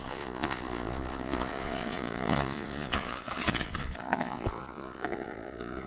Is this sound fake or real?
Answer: fake